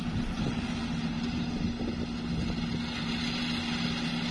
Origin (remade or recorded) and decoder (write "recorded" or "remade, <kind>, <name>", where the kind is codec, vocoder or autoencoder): recorded